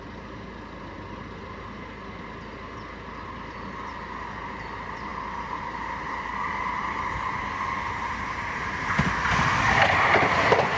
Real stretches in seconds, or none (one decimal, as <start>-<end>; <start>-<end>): 0.0-10.8